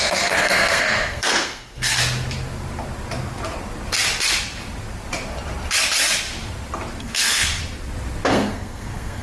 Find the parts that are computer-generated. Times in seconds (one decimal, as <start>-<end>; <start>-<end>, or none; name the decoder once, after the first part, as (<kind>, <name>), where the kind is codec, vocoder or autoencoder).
0.0-2.0 (codec, SNAC); 7.0-7.6; 8.3-9.2